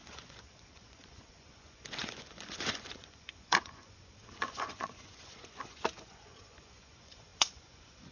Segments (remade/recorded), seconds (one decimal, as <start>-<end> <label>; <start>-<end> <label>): 0.0-8.1 remade